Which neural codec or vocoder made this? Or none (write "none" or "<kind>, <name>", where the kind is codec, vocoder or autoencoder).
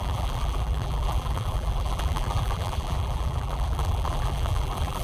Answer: vocoder, BigVGAN v2